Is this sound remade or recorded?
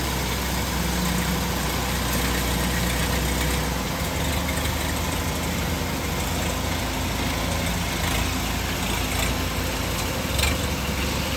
recorded